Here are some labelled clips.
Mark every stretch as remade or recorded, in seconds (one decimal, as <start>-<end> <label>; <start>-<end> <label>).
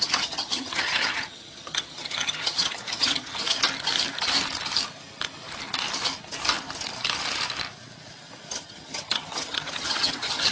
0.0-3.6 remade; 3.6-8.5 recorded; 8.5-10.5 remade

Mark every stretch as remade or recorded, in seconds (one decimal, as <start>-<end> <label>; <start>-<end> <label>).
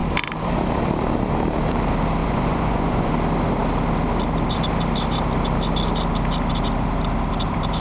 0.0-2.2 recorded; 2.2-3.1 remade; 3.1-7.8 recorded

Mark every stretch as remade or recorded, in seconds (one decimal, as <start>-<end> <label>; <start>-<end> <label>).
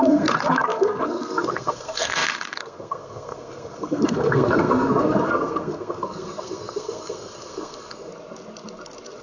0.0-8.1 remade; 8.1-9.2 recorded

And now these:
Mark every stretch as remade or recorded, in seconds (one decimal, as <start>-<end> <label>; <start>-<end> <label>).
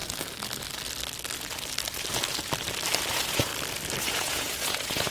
0.0-3.1 recorded; 3.1-3.5 remade; 3.5-4.0 recorded; 4.0-5.1 remade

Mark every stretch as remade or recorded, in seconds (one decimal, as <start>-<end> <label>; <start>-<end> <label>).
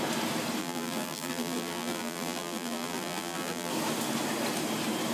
0.0-0.6 recorded; 0.6-3.7 remade; 3.7-5.1 recorded